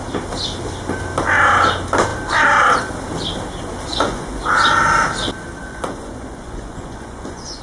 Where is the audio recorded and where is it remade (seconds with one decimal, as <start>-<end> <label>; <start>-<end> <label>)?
0.0-3.9 recorded; 3.9-4.4 remade; 4.4-5.6 recorded; 5.6-7.6 remade